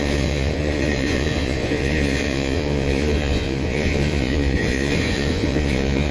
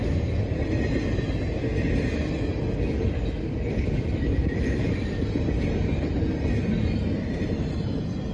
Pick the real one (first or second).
second